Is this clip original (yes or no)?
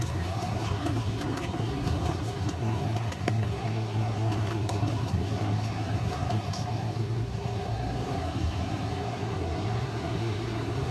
no